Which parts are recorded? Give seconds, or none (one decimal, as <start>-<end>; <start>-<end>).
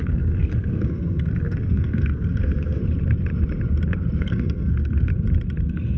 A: 2.8-4.2; 5.1-5.6